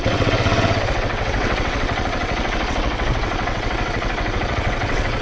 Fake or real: fake